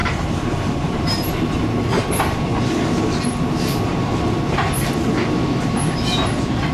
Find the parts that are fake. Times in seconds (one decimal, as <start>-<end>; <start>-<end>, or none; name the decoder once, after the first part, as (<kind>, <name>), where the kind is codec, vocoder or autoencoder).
0.0-1.3 (vocoder, BigVGAN v2)